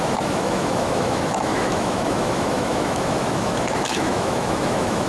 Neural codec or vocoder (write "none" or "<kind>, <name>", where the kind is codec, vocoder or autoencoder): autoencoder, DAC-VAE